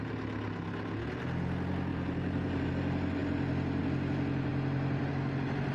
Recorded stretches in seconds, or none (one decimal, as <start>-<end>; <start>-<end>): 0.0-1.9; 2.7-5.7